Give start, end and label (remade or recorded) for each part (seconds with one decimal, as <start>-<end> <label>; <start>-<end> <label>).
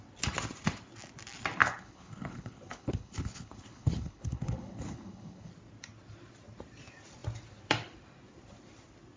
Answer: 0.0-1.6 recorded; 1.6-5.5 remade; 5.5-9.2 recorded